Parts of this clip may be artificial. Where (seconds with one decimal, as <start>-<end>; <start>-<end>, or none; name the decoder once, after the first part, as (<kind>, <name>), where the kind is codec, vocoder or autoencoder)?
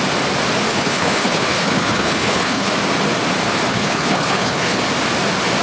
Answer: 0.7-2.7 (codec, HILCodec); 3.7-4.8